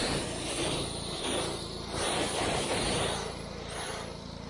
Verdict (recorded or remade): recorded